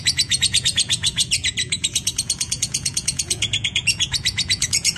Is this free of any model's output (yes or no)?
no